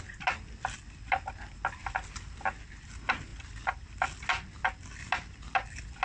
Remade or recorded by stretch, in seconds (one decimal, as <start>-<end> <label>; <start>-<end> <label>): 0.0-6.0 recorded